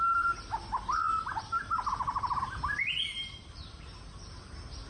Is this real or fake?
real